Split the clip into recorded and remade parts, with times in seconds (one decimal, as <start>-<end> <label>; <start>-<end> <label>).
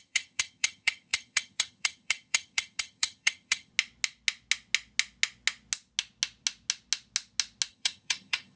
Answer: 0.0-3.7 remade; 3.7-7.7 recorded; 7.7-8.6 remade